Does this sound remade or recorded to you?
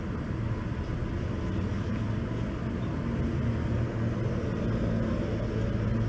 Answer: recorded